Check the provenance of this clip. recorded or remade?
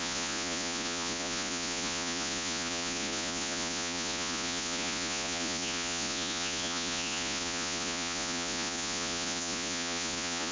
remade